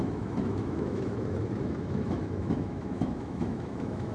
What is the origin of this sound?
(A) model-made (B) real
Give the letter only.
A